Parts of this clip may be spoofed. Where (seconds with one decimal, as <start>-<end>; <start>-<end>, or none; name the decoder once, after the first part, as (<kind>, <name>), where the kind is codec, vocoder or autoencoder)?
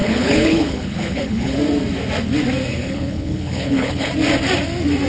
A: 0.0-1.6 (codec, HILCodec); 2.7-4.1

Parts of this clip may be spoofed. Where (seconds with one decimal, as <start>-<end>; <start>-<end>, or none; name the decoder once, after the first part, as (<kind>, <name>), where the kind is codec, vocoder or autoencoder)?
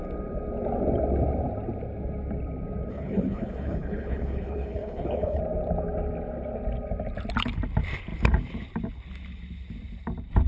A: 2.9-5.4 (codec, HILCodec)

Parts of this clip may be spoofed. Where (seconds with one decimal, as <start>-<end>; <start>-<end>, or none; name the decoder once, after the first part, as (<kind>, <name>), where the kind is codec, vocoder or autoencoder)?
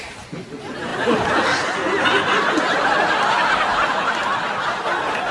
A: none